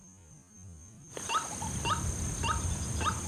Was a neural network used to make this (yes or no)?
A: no